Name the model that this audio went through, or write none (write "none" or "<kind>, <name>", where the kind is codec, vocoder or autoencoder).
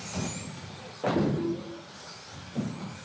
none